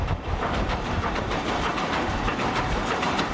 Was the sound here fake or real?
fake